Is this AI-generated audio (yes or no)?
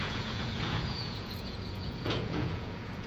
yes